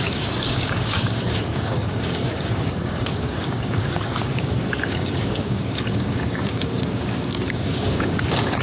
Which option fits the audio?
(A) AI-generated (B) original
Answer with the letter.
A